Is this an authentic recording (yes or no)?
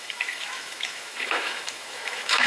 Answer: no